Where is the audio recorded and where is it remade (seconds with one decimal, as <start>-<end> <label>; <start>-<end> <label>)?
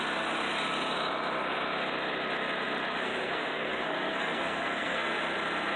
0.0-3.0 recorded; 3.0-5.2 remade; 5.2-5.8 recorded